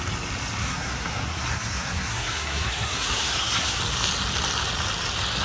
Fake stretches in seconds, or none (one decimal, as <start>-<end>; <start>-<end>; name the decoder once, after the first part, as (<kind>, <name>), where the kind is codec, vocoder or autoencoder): 0.6-3.8 (codec, SNAC)